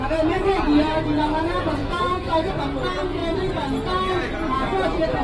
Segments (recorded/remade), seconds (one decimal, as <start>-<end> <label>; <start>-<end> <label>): 0.0-1.8 recorded; 1.8-2.6 remade; 2.6-5.2 recorded